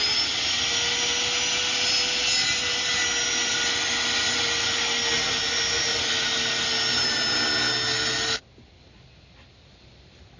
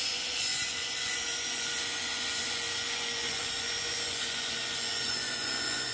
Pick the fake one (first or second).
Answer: second